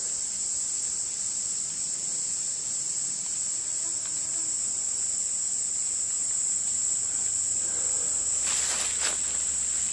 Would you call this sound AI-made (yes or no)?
no